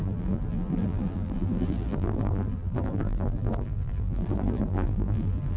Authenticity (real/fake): fake